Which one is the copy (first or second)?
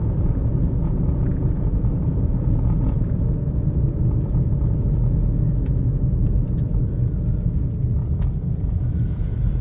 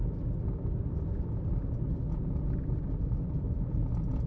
first